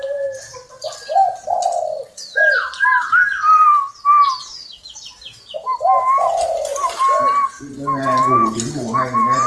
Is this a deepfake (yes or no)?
no